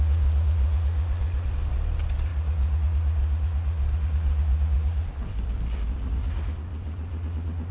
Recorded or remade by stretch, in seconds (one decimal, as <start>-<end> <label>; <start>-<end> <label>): 0.0-7.7 recorded